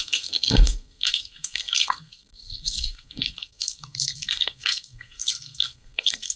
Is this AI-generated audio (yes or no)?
yes